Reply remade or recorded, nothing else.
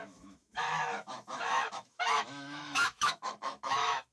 remade